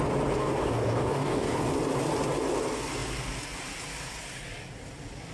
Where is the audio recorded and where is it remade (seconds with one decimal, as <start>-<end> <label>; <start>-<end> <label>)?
0.0-0.4 recorded; 0.4-1.6 remade; 1.6-5.3 recorded